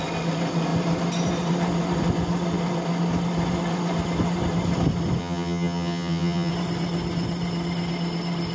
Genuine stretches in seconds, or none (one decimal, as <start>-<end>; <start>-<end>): 0.0-5.2; 6.5-8.5